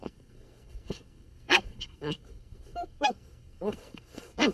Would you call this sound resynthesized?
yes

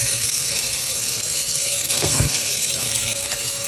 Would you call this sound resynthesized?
yes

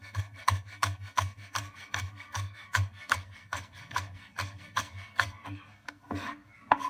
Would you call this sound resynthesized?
yes